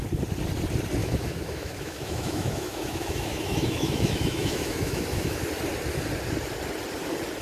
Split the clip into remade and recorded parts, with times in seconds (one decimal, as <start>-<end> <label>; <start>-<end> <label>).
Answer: 0.0-1.0 recorded; 1.0-5.4 remade; 5.4-7.4 recorded